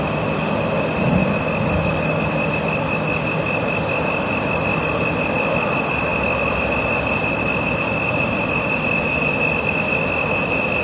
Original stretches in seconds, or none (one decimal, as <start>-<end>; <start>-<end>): 0.0-10.8